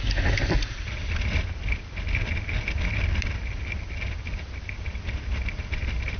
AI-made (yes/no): no